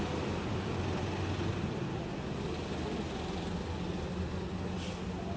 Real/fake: real